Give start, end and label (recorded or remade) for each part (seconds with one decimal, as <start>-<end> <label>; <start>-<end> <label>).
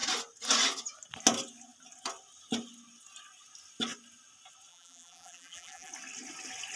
0.0-4.7 recorded; 4.7-5.9 remade; 5.9-6.8 recorded